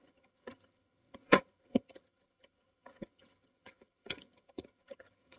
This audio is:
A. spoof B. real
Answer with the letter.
A